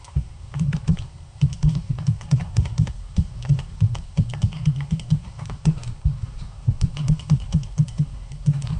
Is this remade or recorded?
remade